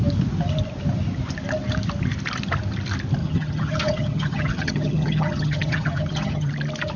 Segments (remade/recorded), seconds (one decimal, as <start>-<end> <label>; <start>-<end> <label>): 0.0-3.2 recorded; 3.2-6.5 remade; 6.5-7.0 recorded

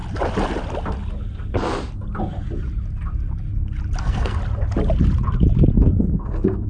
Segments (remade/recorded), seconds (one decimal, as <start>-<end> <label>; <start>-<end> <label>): 0.0-4.0 recorded; 4.0-4.4 remade; 4.4-5.7 recorded; 5.7-6.7 remade

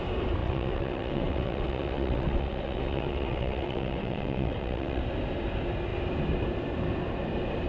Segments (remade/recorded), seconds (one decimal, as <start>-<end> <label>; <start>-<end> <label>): 0.0-0.4 recorded; 0.4-5.0 remade; 5.0-7.7 recorded